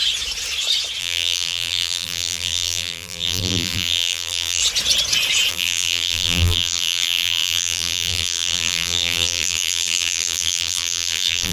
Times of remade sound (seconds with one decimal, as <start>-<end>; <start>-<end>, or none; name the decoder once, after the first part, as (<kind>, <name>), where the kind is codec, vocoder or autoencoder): 1.0-4.6 (vocoder, BigVGAN v2); 5.5-11.5